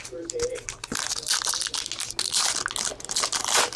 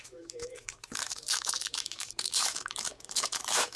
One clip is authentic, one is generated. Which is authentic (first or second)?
first